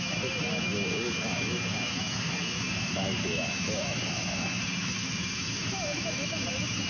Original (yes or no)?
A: no